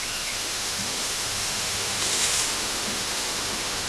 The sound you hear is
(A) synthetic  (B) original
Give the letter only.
A